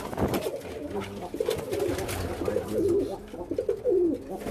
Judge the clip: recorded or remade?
recorded